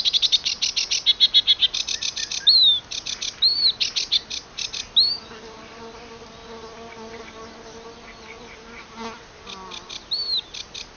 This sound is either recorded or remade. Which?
recorded